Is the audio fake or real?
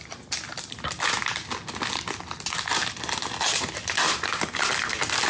real